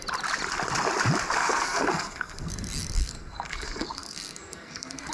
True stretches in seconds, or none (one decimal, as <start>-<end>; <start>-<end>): 0.0-1.4; 2.5-3.0